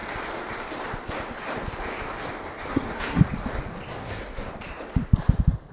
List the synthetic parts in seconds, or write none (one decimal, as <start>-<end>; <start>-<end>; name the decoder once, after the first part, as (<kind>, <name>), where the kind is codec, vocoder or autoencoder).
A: 2.7-3.2 (codec, SNAC); 4.0-4.5